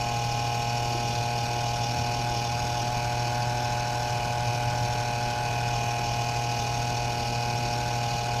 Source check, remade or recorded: recorded